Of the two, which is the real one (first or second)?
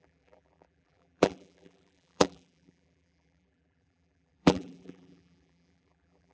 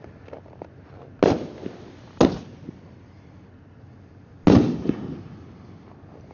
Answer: second